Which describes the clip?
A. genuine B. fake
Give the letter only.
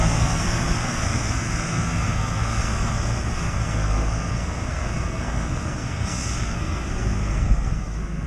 B